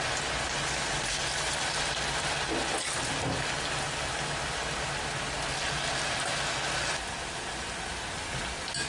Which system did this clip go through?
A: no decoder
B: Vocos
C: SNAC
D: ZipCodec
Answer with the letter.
A